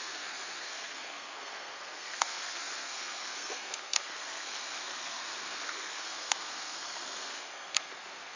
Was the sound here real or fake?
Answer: fake